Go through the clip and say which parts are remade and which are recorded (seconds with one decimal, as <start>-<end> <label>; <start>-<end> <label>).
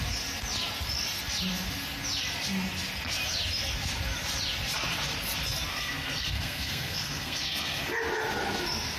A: 0.0-5.7 recorded; 5.7-7.9 remade; 7.9-9.0 recorded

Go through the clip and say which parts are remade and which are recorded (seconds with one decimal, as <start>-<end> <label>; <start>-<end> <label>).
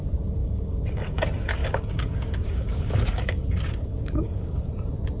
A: 0.0-0.4 recorded; 0.4-1.2 remade; 1.2-1.6 recorded; 1.6-4.7 remade; 4.7-5.2 recorded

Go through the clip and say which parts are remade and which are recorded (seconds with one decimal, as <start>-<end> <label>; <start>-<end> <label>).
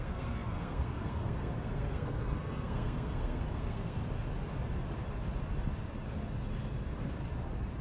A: 0.0-4.0 remade; 4.0-7.8 recorded